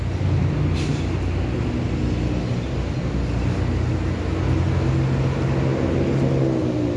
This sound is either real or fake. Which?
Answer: real